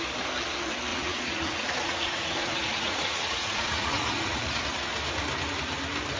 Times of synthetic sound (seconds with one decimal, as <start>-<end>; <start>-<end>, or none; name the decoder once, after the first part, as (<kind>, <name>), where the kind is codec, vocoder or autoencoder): 0.9-4.6 (vocoder, Vocos)

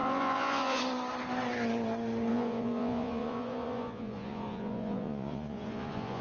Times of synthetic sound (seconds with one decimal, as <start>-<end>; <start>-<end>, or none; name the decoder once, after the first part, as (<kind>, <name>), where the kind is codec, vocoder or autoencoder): 0.0-0.8 (vocoder, Vocos); 2.3-6.2

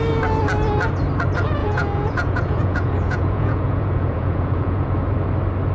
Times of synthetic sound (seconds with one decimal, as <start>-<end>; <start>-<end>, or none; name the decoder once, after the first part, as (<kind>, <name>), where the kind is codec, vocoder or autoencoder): 1.6-5.0 (vocoder, Vocos)

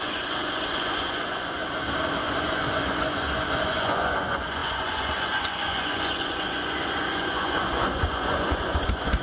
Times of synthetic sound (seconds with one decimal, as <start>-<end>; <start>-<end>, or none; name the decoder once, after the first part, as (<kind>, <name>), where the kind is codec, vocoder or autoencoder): 0.0-1.6 (vocoder, Vocos); 2.2-9.2

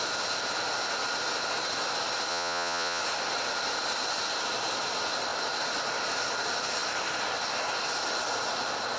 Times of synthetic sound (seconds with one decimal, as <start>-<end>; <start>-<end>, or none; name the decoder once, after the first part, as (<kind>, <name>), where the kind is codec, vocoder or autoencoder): 2.3-3.0 (vocoder, Vocos)

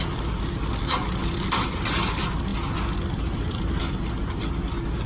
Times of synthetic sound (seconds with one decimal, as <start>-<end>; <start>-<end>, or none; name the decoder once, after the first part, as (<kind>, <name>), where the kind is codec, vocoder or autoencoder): none

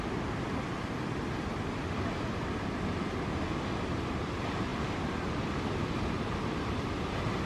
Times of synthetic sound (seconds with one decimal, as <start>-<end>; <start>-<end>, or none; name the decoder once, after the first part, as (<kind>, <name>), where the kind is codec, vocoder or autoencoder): none

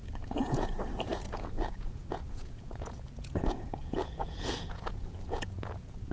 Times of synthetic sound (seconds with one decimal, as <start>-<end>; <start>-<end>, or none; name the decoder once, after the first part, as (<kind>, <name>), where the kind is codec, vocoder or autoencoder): 0.0-6.1 (vocoder, Vocos)